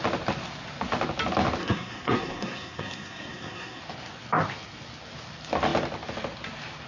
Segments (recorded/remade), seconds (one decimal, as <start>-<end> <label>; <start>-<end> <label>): 0.0-1.6 recorded; 1.6-3.8 remade; 3.8-6.9 recorded